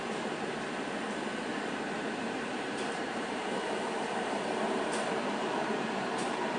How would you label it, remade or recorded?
remade